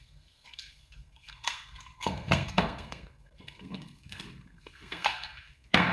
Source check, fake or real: fake